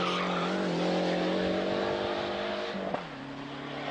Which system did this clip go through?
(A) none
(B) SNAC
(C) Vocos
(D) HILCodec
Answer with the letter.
A